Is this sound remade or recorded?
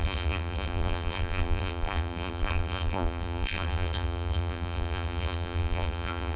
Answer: remade